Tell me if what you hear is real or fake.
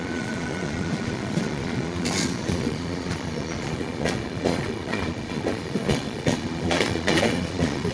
fake